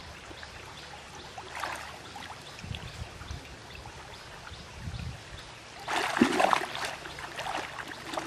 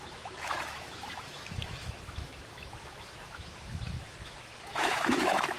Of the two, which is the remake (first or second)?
second